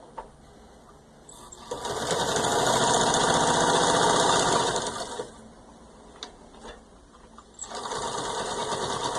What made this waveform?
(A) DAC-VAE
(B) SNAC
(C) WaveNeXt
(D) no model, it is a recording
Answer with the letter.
D